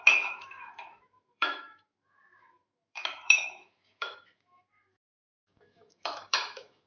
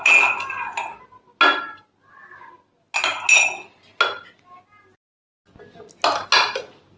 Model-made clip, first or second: first